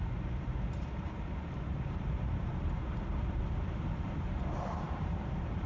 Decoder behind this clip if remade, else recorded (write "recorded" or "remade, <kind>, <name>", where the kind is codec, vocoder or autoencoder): remade, vocoder, BigVGAN v2